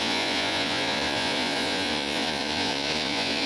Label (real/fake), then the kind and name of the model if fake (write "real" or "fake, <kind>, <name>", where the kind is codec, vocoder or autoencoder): fake, vocoder, Vocos